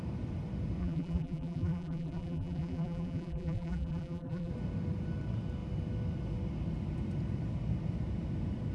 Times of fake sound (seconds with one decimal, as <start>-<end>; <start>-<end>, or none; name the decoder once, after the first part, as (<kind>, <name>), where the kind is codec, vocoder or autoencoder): 0.8-4.5 (vocoder, BigVGAN v2)